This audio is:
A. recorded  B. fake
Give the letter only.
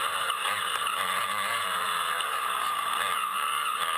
B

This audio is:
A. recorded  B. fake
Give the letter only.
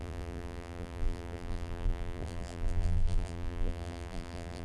B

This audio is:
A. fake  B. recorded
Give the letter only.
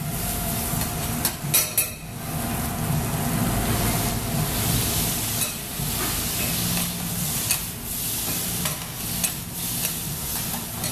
B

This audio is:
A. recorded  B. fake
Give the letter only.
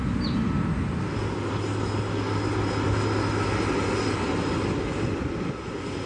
A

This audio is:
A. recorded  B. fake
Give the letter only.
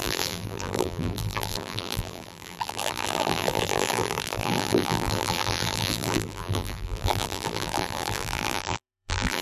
B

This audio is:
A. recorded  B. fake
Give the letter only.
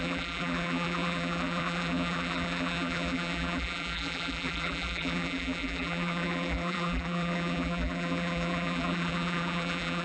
B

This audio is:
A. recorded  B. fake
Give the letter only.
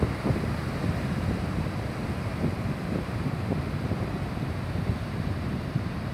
B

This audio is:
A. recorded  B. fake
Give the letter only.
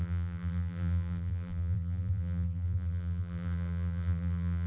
B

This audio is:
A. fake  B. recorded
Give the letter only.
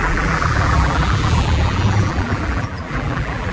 A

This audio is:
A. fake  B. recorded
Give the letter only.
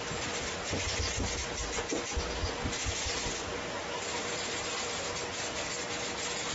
B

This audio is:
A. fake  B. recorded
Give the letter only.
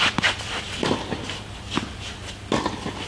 A